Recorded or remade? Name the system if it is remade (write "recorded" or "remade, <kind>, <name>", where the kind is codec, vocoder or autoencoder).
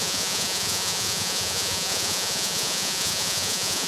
remade, vocoder, Vocos